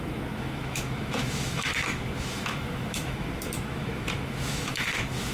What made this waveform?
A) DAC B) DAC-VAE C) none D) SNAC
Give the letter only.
B